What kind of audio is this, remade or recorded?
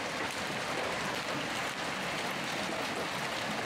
recorded